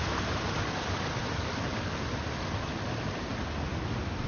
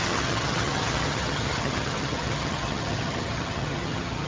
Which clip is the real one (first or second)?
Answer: first